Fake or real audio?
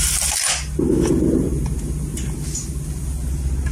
real